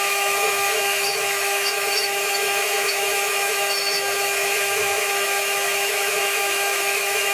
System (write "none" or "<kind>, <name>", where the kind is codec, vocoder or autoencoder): autoencoder, DAC-VAE